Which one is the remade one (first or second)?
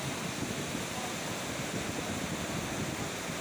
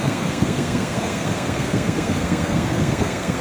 second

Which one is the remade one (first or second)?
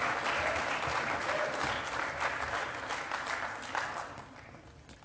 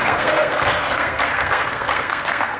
second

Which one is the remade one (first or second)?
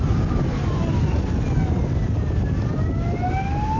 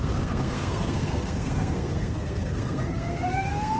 second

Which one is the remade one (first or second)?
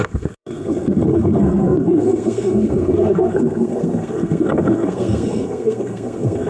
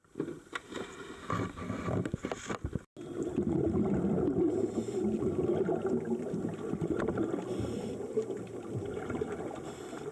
first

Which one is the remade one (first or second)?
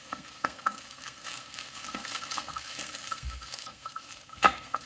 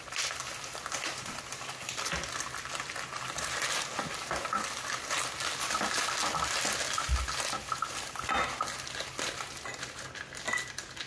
first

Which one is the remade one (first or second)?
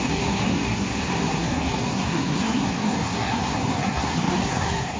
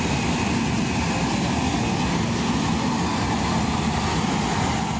first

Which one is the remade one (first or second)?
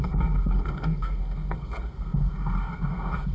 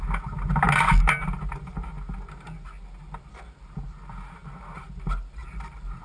first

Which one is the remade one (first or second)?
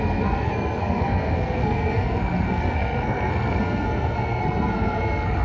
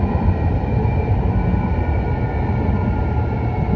first